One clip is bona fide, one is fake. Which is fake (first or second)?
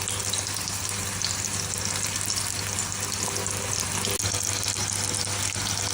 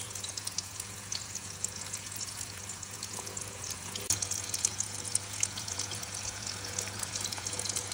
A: second